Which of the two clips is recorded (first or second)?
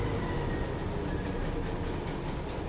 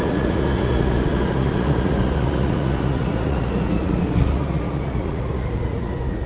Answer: first